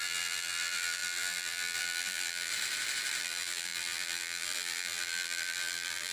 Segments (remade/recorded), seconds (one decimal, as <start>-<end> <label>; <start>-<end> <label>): 0.0-2.5 remade; 2.5-3.2 recorded; 3.2-6.1 remade